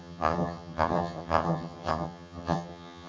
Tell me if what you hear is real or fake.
fake